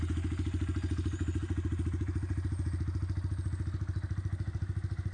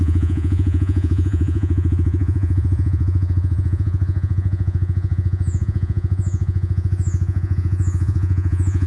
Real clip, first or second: first